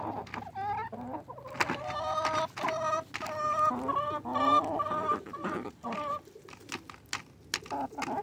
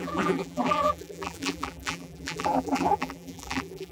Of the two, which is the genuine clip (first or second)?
first